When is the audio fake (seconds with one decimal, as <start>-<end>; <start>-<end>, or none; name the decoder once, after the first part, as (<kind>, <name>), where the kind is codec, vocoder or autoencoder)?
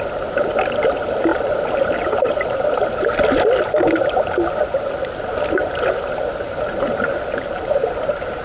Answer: none